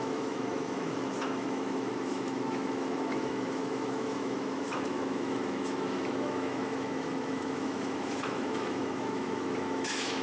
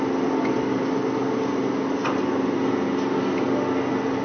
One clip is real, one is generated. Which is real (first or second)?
second